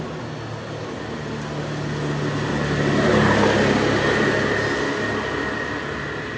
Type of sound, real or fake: real